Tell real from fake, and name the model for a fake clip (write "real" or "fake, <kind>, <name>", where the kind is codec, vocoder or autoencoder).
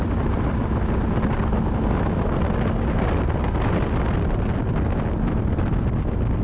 real